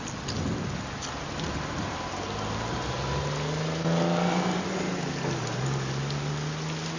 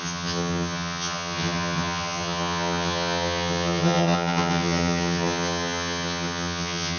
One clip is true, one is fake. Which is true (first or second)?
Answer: first